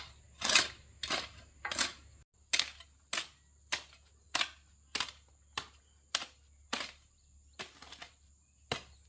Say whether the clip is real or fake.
real